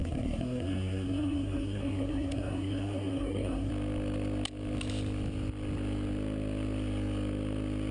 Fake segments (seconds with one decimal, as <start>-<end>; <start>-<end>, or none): 0.0-3.7